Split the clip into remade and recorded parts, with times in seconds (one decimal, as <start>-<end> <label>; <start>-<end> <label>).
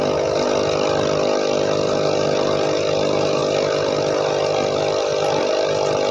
0.0-6.1 recorded